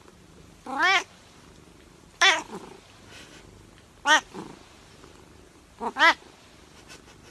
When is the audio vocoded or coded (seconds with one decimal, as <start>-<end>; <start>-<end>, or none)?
none